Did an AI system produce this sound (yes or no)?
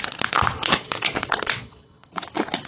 yes